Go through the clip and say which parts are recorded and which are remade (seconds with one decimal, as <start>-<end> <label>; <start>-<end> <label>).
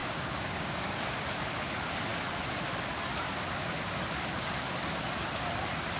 0.0-1.0 remade; 1.0-6.0 recorded